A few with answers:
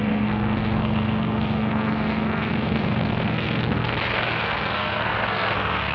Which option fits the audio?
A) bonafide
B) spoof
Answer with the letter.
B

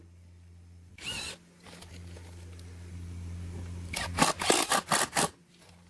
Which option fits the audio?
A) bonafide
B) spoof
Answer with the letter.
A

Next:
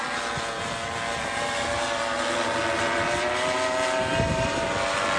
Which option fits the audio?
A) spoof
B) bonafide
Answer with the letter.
B